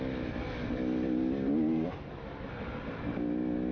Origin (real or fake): real